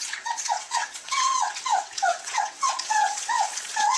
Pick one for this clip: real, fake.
fake